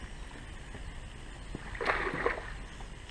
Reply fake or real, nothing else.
real